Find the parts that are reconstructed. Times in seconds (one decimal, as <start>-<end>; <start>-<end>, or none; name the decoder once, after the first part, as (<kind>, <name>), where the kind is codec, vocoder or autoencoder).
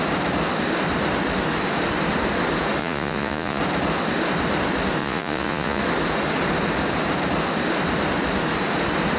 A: 2.8-3.6 (vocoder, Vocos); 5.0-5.8